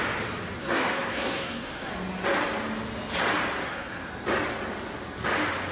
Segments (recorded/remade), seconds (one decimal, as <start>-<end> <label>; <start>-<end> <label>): 0.0-0.6 recorded; 0.6-1.9 remade; 1.9-3.6 recorded; 3.6-4.1 remade; 4.1-5.7 recorded

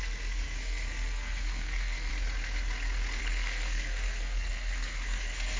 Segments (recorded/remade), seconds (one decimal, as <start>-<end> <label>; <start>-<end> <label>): 0.0-2.1 remade; 2.1-3.2 recorded; 3.2-5.6 remade

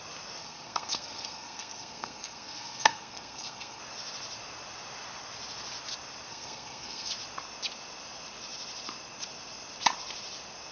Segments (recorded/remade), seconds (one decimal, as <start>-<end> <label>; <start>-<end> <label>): 0.0-0.4 recorded; 0.4-3.8 remade; 3.8-6.3 recorded; 6.3-7.1 remade; 7.1-10.7 recorded

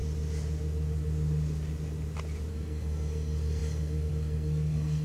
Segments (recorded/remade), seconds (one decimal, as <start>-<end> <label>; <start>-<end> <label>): 0.0-2.5 recorded; 2.5-5.0 remade

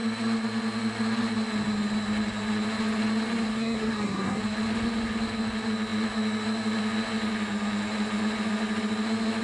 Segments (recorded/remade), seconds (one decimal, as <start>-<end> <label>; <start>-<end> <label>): 0.0-3.5 recorded; 3.5-4.4 remade; 4.4-9.4 recorded

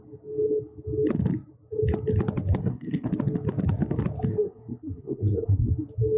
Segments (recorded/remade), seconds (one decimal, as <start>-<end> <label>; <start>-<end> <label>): 0.0-2.6 recorded; 2.6-3.1 remade; 3.1-4.3 recorded; 4.3-5.7 remade; 5.7-6.2 recorded